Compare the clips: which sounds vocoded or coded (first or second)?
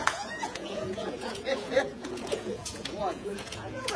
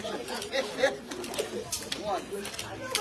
first